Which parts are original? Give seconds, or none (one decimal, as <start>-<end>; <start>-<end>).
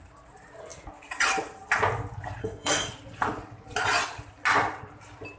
0.0-2.4; 2.9-5.4